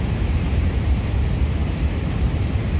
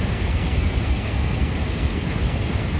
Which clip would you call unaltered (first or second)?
first